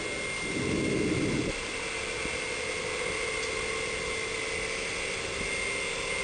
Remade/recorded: recorded